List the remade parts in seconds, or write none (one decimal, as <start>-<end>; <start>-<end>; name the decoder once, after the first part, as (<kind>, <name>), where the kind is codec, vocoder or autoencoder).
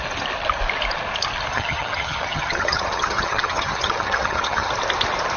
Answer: 1.5-4.7 (vocoder, HiFi-GAN)